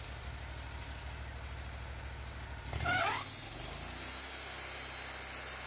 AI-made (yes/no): no